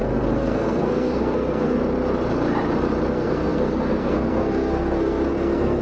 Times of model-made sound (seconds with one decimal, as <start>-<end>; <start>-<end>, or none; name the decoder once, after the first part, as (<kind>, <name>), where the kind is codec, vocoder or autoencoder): 0.0-1.8 (codec, SNAC); 3.1-5.8